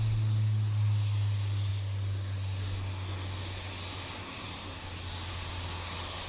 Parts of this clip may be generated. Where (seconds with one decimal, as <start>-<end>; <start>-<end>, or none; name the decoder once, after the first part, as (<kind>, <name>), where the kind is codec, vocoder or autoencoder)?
none